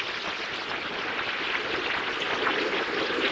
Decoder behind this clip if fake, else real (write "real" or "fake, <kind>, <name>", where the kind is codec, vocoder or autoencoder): fake, vocoder, BigVGAN v2